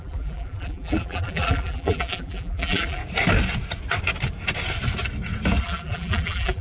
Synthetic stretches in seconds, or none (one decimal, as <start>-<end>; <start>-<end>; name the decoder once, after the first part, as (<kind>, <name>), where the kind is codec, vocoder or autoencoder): 0.0-3.0 (vocoder, BigVGAN v2); 5.6-6.6